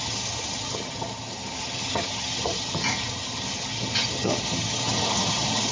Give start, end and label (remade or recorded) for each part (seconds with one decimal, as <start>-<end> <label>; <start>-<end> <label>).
0.0-5.7 remade